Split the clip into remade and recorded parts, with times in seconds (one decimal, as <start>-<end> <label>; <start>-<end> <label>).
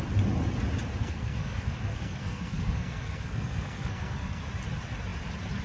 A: 0.0-1.0 recorded; 1.0-4.4 remade; 4.4-5.6 recorded